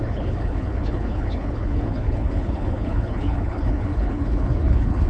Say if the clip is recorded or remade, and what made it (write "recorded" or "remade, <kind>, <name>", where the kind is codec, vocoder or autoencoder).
remade, codec, HILCodec